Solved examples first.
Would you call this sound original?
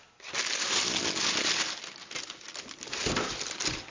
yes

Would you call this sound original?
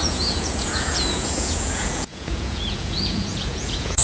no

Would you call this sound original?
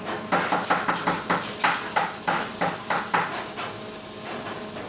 yes